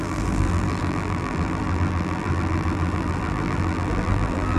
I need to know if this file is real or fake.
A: fake